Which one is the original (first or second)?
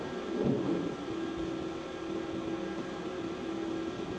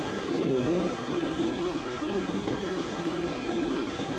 first